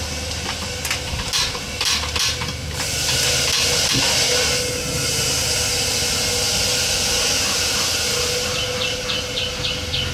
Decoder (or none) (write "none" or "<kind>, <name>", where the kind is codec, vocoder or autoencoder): none